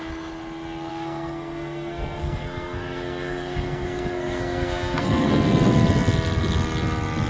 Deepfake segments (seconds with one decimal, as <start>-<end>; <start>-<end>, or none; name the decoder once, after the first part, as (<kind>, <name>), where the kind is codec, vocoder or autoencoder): 0.9-5.3 (codec, SNAC)